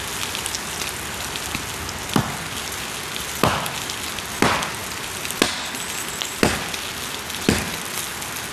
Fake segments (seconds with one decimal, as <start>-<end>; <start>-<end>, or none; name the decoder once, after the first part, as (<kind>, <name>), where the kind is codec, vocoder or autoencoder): none